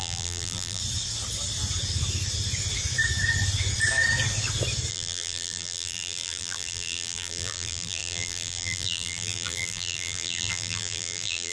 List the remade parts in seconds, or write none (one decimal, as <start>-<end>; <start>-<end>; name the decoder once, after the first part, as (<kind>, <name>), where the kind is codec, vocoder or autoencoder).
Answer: 0.0-0.8 (vocoder, BigVGAN v2); 4.9-11.5

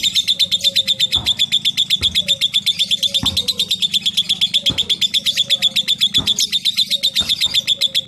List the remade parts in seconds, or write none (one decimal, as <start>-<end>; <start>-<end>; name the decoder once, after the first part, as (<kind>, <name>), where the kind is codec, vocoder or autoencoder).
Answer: none